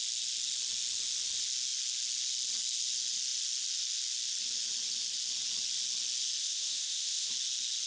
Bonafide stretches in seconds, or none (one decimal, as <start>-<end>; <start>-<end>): 0.0-6.4; 7.3-7.9